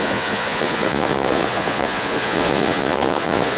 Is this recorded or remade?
remade